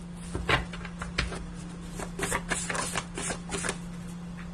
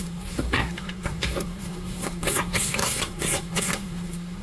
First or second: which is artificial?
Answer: second